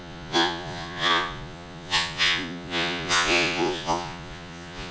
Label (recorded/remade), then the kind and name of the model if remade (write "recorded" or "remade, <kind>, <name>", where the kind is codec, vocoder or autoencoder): remade, vocoder, Vocos